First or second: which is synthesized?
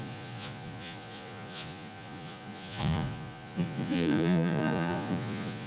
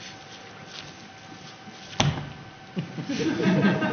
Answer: first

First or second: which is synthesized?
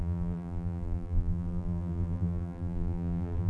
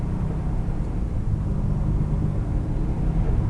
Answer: first